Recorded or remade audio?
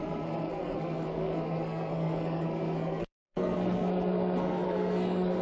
remade